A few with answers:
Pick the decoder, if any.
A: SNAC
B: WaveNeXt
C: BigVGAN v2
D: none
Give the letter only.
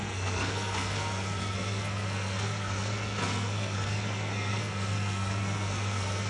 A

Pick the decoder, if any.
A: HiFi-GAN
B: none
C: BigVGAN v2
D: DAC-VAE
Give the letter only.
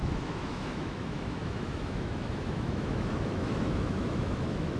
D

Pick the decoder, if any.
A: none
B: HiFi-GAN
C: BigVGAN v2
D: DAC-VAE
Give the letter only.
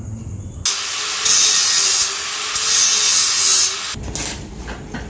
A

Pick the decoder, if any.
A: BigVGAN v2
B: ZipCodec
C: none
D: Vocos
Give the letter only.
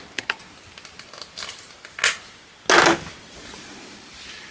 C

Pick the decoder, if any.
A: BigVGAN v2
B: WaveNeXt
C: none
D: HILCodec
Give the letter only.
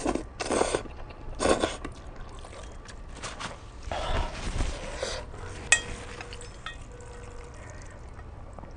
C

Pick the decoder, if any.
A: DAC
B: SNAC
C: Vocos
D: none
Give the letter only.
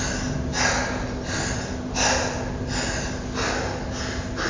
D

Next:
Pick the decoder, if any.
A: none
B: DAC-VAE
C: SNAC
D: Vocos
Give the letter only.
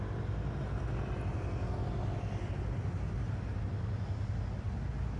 A